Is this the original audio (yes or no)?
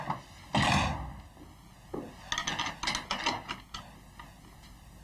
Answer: yes